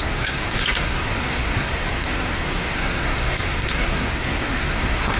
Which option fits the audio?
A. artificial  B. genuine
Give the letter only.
A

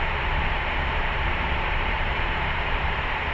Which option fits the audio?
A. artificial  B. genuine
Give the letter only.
A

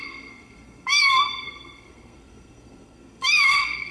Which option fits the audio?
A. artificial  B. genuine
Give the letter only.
A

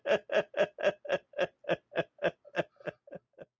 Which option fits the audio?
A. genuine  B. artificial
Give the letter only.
A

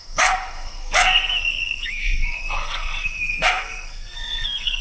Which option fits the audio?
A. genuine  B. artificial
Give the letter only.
B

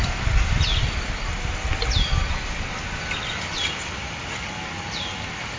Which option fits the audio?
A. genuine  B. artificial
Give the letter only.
A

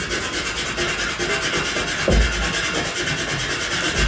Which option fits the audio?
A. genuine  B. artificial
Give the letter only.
A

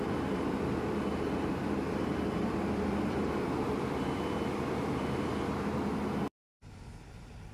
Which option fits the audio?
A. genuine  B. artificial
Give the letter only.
B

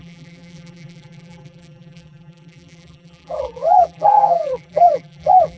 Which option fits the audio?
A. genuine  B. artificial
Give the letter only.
B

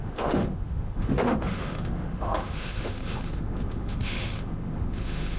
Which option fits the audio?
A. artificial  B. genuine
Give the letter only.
A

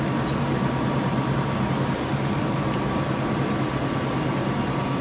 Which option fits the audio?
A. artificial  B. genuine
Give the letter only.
B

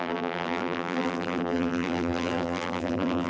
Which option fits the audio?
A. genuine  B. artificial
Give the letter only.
B